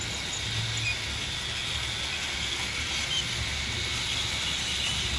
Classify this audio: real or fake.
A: real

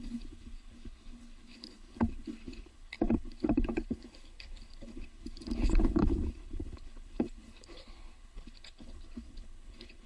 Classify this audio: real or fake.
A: fake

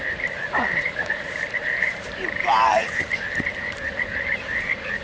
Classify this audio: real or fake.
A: fake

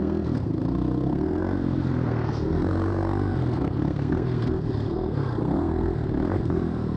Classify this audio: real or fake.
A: fake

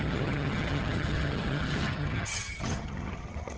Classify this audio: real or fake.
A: fake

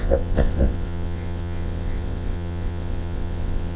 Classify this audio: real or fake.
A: fake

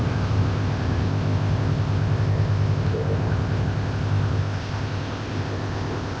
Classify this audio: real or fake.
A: fake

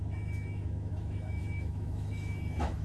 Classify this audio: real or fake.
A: fake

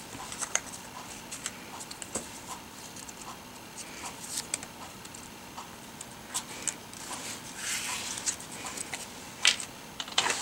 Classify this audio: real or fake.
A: real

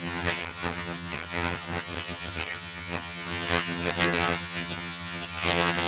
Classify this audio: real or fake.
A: fake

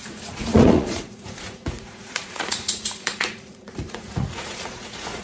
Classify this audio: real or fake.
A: fake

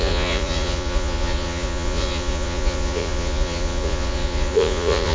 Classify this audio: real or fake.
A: fake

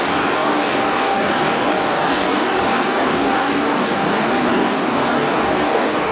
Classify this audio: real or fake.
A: fake